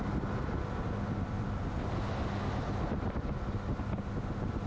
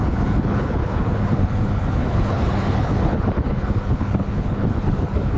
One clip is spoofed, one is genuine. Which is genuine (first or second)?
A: first